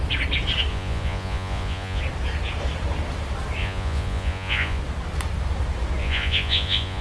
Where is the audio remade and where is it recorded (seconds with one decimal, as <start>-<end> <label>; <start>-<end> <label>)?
0.0-0.7 recorded; 0.7-2.0 remade; 2.0-3.6 recorded; 3.6-4.8 remade; 4.8-6.0 recorded; 6.0-7.0 remade